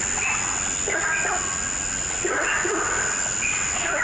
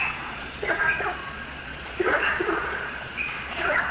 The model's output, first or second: second